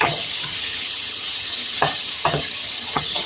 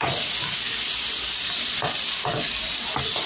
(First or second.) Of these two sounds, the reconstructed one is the first